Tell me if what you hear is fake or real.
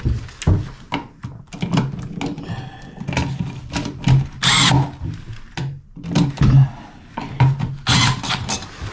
real